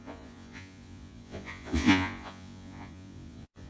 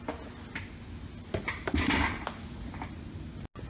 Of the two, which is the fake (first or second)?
first